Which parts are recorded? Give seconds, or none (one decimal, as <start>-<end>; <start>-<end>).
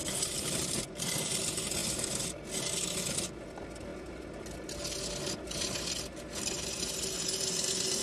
0.8-1.8; 2.6-8.0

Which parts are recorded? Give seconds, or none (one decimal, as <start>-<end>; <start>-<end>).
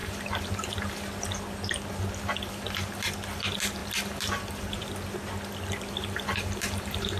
0.0-7.2